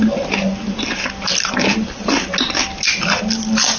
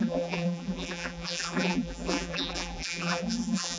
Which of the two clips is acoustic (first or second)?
first